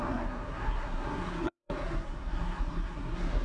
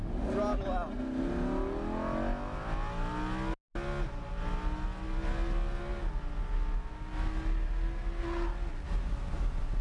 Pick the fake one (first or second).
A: first